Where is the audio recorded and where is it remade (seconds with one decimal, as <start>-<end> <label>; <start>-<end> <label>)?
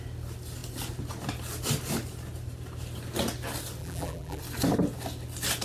0.0-3.8 recorded; 3.8-4.4 remade; 4.4-5.6 recorded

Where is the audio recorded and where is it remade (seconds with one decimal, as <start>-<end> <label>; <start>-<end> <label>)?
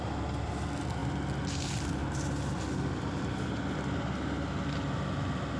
0.0-5.6 recorded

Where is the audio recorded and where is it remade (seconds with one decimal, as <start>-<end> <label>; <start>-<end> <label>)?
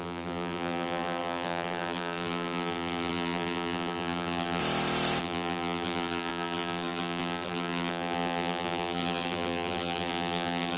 0.0-4.6 remade; 4.6-5.2 recorded; 5.2-10.8 remade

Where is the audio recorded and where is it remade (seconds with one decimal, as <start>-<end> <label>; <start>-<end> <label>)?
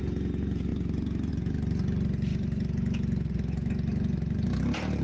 0.0-2.3 recorded; 2.3-3.7 remade; 3.7-5.0 recorded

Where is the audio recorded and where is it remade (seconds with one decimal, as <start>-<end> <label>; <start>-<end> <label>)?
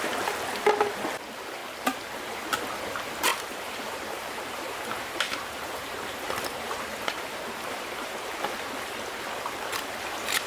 0.0-3.3 recorded; 3.3-8.3 remade; 8.3-10.5 recorded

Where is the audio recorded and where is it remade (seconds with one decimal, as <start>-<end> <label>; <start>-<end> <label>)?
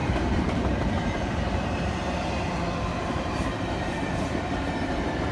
0.0-2.5 remade; 2.5-2.9 recorded; 2.9-4.7 remade; 4.7-5.3 recorded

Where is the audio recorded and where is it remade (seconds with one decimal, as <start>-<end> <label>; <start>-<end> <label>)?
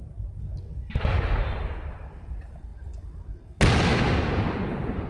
0.0-5.1 recorded